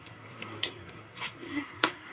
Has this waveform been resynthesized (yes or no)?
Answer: yes